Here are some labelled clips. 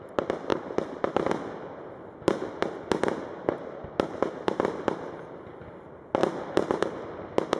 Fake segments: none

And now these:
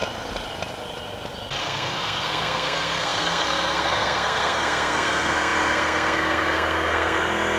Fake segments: 1.6-7.6 (codec, SNAC)

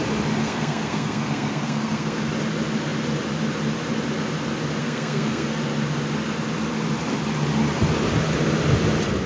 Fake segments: 0.4-2.2 (codec, SNAC); 4.8-5.6

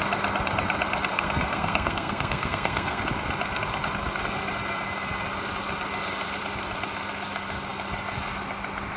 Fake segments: 1.1-3.0 (codec, SNAC)

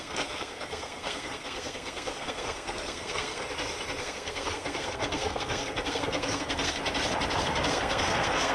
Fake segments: 0.0-3.4 (codec, SNAC); 4.0-6.8; 7.4-8.5

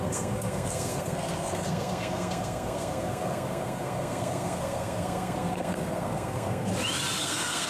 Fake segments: 0.0-6.7 (codec, SNAC); 7.2-7.7

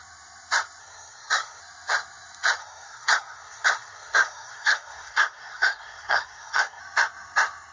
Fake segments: 0.8-1.6 (codec, SNAC); 2.6-6.8